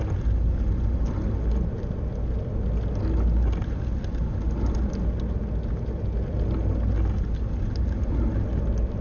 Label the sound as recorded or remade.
recorded